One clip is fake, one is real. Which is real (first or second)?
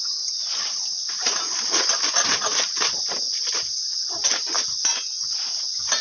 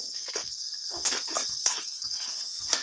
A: first